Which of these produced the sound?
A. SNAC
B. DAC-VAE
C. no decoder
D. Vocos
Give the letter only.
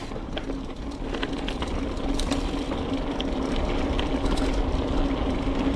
C